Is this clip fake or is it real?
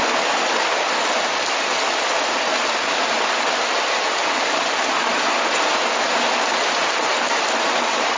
real